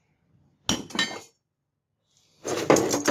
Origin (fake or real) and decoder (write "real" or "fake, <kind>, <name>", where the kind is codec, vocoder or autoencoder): real